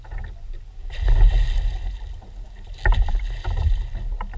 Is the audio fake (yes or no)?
no